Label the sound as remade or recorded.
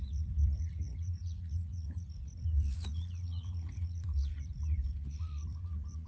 remade